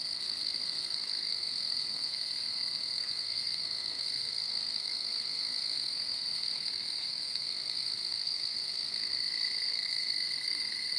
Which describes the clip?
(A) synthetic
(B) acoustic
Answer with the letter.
A